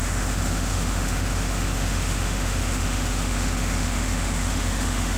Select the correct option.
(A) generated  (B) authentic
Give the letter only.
A